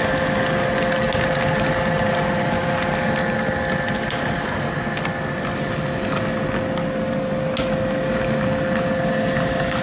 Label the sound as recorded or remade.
recorded